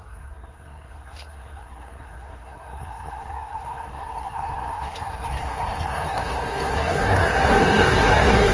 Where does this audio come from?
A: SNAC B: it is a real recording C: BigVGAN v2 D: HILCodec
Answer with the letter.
A